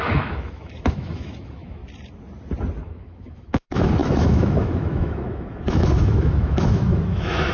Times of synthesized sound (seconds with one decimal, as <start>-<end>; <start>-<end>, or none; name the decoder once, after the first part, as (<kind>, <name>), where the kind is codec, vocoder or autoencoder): 0.0-1.8 (autoencoder, DAC-VAE); 2.8-7.5